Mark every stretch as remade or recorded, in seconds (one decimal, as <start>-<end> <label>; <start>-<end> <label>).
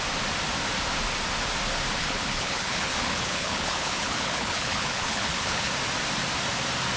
0.0-2.0 recorded; 2.0-5.7 remade; 5.7-7.0 recorded